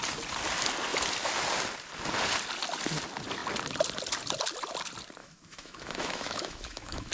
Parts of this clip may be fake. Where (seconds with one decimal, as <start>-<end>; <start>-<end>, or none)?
5.2-7.1